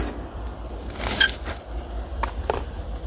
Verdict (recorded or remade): remade